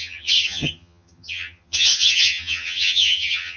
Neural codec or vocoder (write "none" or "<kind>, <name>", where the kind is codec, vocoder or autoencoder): vocoder, HiFi-GAN